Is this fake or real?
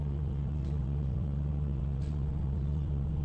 fake